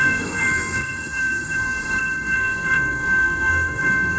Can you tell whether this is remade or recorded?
remade